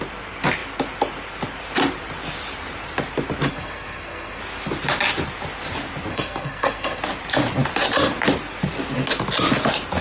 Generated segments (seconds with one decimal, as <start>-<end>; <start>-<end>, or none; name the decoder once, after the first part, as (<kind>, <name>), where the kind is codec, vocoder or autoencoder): 3.5-4.4 (codec, SNAC); 6.1-7.0